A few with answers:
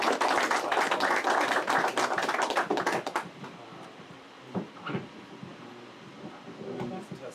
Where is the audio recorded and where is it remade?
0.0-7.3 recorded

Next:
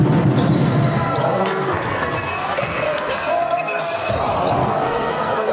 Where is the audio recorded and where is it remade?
0.0-1.2 recorded; 1.2-4.1 remade; 4.1-4.6 recorded; 4.6-5.5 remade

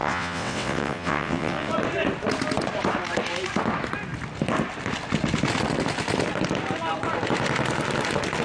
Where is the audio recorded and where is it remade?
0.0-1.7 remade; 1.7-8.4 recorded

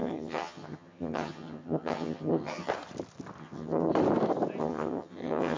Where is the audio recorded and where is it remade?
0.0-2.7 remade; 2.7-3.4 recorded; 3.4-3.9 remade; 3.9-4.6 recorded; 4.6-5.6 remade

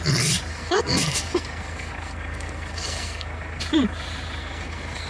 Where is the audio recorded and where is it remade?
0.0-0.5 recorded; 0.5-3.6 remade; 3.6-4.4 recorded; 4.4-5.1 remade

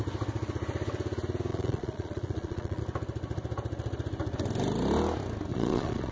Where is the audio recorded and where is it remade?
0.0-1.5 recorded; 1.5-2.8 remade; 2.8-5.5 recorded; 5.5-6.1 remade